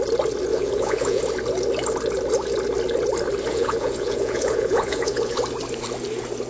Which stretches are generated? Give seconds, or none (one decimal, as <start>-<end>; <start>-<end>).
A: 0.5-1.2; 3.5-5.4